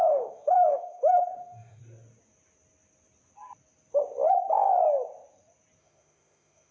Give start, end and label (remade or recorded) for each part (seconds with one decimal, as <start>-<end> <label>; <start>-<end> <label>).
0.0-1.8 remade; 1.8-5.8 recorded; 5.8-6.7 remade